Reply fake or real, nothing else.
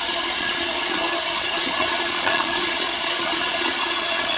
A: fake